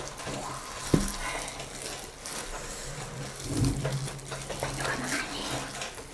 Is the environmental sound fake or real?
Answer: real